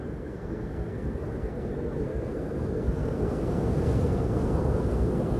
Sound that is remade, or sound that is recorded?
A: remade